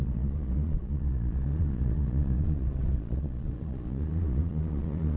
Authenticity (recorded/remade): remade